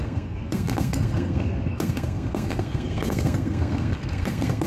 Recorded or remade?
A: remade